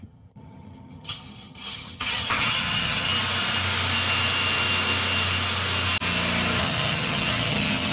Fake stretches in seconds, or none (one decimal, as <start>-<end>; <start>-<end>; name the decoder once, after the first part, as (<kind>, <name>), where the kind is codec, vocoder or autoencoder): 0.0-3.1 (vocoder, HiFi-GAN); 6.6-7.9